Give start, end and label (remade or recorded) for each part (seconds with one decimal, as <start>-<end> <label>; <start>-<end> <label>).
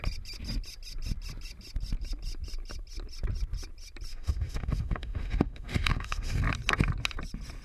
0.0-4.1 recorded; 4.1-6.4 remade; 6.4-7.6 recorded